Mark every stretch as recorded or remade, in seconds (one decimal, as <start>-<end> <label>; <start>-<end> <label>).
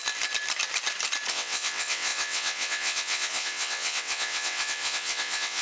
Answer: 0.0-1.3 recorded; 1.3-5.6 remade